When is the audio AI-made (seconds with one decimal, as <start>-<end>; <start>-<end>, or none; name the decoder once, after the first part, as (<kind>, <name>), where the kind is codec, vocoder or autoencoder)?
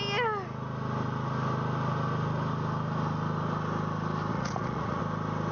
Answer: 4.3-5.0 (vocoder, Vocos)